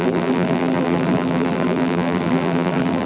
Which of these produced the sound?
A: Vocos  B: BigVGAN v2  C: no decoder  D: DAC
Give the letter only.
B